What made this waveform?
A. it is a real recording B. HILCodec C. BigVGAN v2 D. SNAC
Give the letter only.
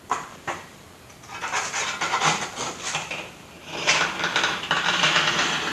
C